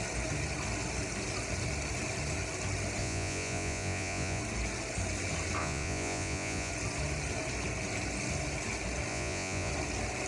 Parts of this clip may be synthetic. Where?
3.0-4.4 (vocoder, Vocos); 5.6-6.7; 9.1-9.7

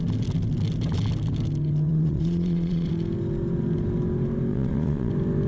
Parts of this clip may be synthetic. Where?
1.9-2.9 (vocoder, Vocos); 4.5-5.1

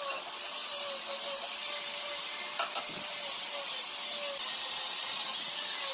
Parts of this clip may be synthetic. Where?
none